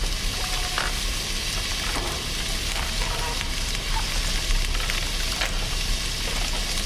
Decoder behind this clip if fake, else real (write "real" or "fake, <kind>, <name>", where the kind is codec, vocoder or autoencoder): real